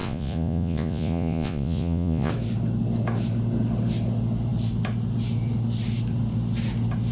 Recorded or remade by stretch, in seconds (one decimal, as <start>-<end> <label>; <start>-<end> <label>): 0.0-2.3 remade; 2.3-7.1 recorded